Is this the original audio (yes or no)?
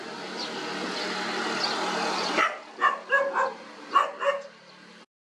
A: yes